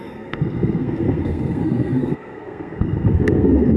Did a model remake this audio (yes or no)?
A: yes